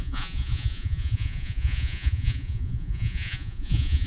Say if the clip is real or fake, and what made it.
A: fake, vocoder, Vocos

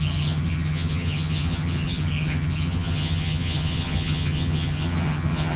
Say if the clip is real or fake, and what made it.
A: fake, vocoder, HiFi-GAN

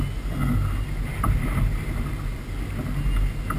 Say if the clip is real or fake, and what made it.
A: real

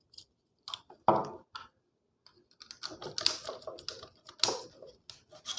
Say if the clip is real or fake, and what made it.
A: real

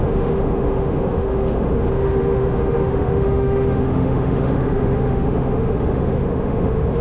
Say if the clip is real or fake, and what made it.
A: fake, autoencoder, DAC-VAE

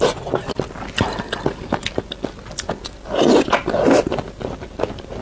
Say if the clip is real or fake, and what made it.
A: real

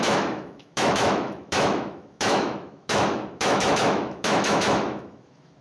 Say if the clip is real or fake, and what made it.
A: fake, autoencoder, DAC-VAE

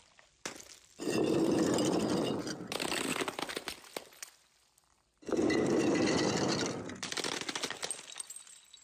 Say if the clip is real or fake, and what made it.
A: real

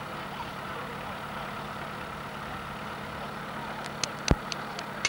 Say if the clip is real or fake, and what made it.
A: real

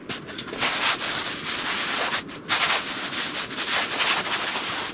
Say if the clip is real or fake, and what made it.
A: real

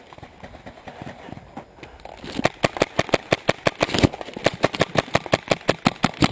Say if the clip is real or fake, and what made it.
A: real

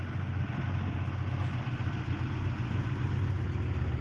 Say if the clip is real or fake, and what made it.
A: real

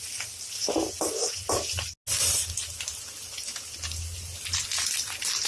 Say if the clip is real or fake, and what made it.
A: real